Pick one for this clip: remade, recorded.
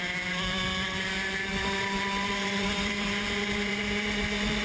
remade